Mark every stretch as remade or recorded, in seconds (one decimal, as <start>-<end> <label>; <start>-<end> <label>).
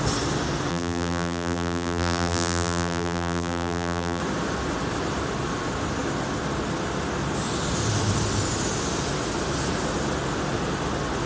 0.0-0.7 recorded; 0.7-4.2 remade; 4.2-11.3 recorded